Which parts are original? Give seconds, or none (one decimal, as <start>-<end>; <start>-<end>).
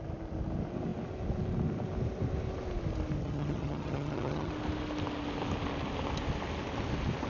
0.0-3.2; 4.5-7.3